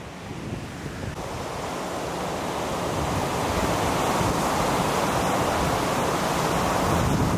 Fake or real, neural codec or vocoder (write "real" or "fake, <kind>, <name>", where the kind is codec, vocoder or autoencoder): real